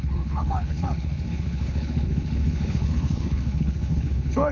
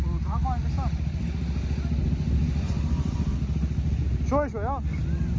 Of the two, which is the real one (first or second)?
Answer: second